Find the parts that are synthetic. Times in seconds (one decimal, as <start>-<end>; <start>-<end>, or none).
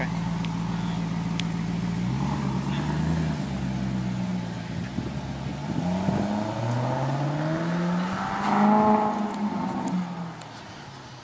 none